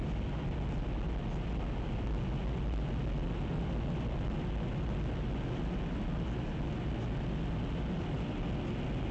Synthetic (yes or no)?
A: no